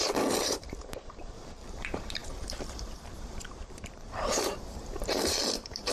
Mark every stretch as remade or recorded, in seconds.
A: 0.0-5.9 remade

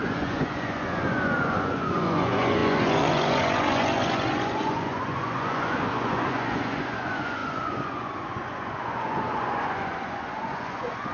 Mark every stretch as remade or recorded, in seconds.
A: 0.0-11.1 remade

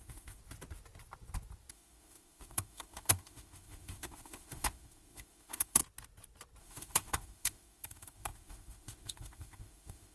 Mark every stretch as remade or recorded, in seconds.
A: 0.0-0.4 remade; 0.4-1.7 recorded; 1.7-5.8 remade; 5.8-6.6 recorded; 6.6-10.1 remade

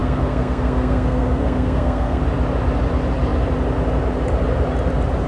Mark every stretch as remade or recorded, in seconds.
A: 0.0-2.2 remade; 2.2-5.3 recorded

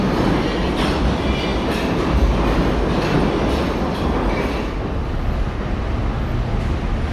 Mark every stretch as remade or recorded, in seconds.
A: 0.0-7.1 recorded

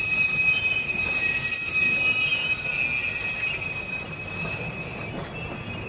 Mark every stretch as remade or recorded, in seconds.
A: 0.0-5.9 recorded

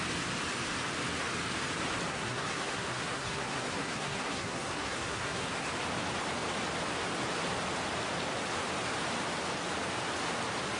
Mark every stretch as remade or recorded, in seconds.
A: 0.0-2.1 recorded; 2.1-5.7 remade; 5.7-10.8 recorded